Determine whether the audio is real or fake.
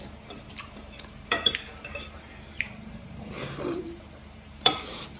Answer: fake